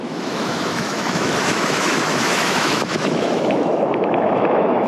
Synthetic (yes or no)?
yes